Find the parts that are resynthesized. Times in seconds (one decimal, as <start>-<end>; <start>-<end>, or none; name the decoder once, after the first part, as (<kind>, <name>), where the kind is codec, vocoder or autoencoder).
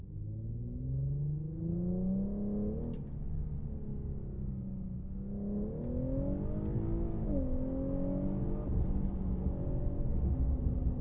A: 9.8-10.6 (codec, DAC)